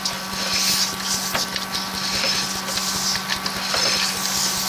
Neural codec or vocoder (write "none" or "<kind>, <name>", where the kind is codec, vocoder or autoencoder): none